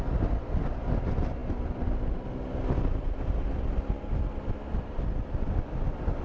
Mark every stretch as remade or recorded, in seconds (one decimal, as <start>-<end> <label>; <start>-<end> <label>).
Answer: 0.0-6.2 recorded